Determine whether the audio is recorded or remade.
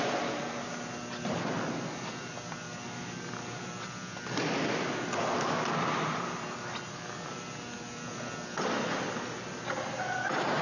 recorded